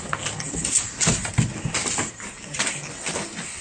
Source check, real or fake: real